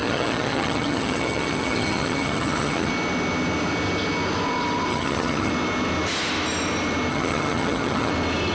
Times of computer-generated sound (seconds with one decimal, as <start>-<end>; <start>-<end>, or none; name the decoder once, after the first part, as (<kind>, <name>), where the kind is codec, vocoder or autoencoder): 0.0-2.9 (vocoder, HiFi-GAN); 4.9-5.5; 7.1-8.1